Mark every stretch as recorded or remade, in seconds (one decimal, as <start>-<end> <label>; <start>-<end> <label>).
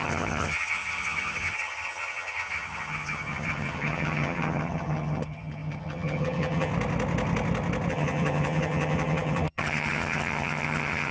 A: 0.0-6.7 remade; 6.7-7.9 recorded; 7.9-11.1 remade